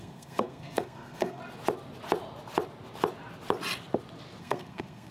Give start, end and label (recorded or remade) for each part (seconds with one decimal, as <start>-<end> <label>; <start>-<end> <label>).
0.0-1.4 remade; 1.4-4.4 recorded; 4.4-5.1 remade

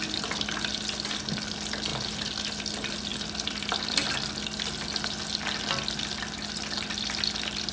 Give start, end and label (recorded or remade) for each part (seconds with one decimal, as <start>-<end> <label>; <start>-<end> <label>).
0.0-7.7 recorded

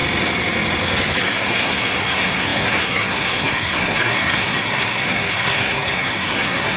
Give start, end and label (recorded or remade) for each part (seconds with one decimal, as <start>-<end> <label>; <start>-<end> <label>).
0.0-1.2 recorded; 1.2-6.8 remade

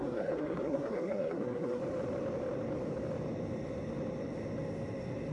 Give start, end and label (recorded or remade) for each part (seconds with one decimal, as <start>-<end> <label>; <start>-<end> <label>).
0.0-1.8 remade; 1.8-5.3 recorded

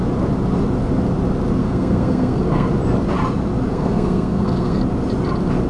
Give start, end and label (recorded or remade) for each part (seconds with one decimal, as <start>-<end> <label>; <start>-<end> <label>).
0.0-1.6 recorded; 1.6-2.7 remade; 2.7-3.7 recorded; 3.7-4.8 remade; 4.8-5.7 recorded

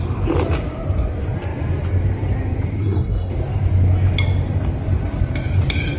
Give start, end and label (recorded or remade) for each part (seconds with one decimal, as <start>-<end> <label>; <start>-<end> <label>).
0.0-2.8 recorded; 2.8-3.3 remade; 3.3-6.0 recorded

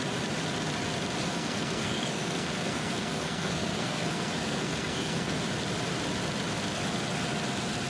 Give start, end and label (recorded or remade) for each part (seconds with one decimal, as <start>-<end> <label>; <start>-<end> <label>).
0.0-1.2 recorded; 1.2-5.4 remade; 5.4-7.9 recorded

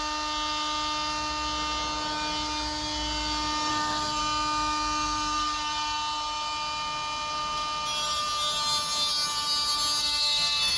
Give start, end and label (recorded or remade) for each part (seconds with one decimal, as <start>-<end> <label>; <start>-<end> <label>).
0.0-3.7 recorded; 3.7-4.2 remade; 4.2-10.0 recorded; 10.0-10.8 remade